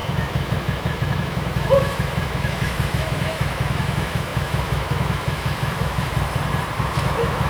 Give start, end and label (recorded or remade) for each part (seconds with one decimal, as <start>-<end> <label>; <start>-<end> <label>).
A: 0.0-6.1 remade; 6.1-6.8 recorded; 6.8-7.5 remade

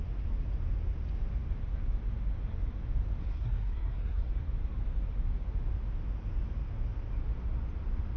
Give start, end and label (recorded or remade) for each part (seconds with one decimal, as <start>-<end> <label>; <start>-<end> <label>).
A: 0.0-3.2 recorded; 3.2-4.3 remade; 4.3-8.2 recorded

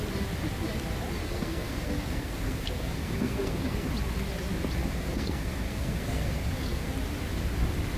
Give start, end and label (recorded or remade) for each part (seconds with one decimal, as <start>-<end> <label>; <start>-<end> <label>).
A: 0.0-1.2 recorded; 1.2-3.9 remade; 3.9-4.8 recorded; 4.8-6.9 remade; 6.9-8.0 recorded

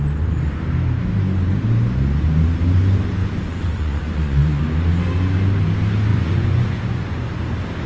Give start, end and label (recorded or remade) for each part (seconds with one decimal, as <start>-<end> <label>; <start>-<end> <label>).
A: 0.0-3.2 recorded; 3.2-4.6 remade; 4.6-6.1 recorded; 6.1-7.4 remade; 7.4-7.9 recorded

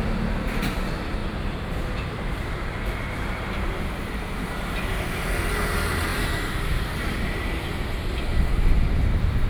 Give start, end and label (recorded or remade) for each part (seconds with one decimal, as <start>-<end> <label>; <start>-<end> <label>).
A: 0.0-1.2 recorded; 1.2-3.8 remade; 3.8-8.3 recorded; 8.3-9.5 remade